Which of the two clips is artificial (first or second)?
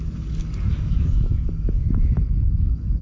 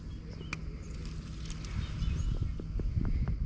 first